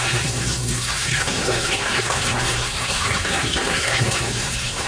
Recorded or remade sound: remade